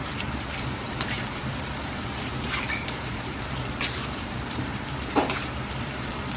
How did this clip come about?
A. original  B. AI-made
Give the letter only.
B